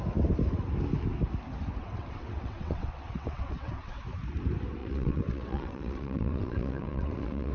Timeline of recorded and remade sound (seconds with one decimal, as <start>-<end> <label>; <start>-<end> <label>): 0.0-1.8 recorded; 1.8-4.0 remade; 4.0-4.8 recorded; 4.8-7.5 remade